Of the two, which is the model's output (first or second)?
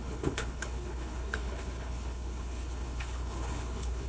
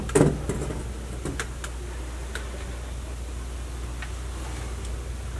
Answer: first